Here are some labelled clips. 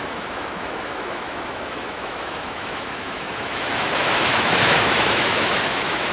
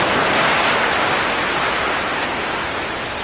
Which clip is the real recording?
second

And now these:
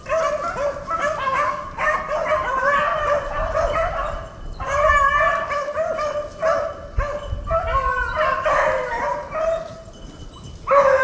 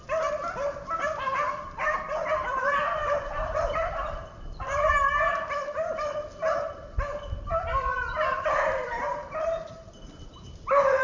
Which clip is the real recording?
first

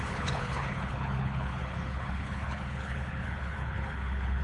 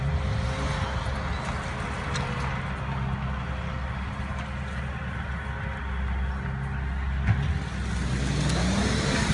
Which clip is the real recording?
second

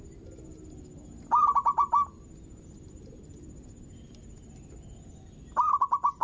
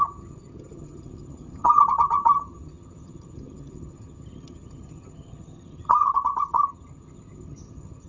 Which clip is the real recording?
first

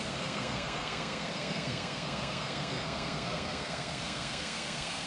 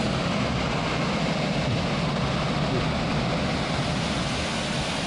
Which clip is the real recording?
second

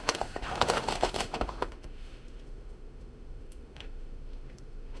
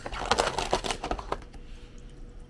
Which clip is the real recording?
second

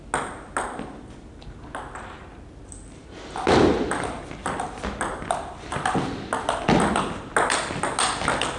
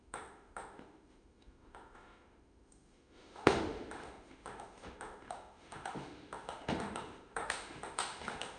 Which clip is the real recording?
first